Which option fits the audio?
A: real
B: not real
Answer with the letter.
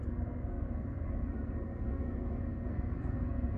B